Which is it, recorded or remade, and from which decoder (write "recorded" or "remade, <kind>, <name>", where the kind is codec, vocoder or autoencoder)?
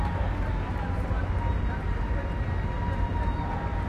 recorded